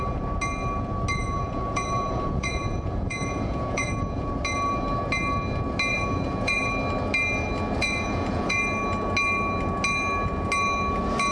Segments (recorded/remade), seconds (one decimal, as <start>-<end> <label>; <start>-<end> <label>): 0.0-1.2 recorded; 1.2-4.4 remade; 4.4-5.9 recorded; 5.9-6.7 remade; 6.7-7.8 recorded; 7.8-8.6 remade; 8.6-11.3 recorded